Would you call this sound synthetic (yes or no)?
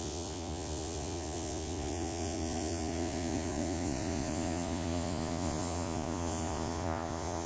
yes